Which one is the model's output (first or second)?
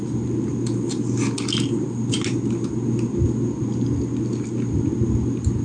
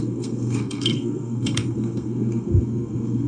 second